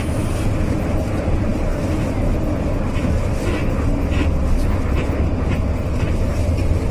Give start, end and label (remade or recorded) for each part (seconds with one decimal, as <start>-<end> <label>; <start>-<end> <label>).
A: 0.0-6.9 recorded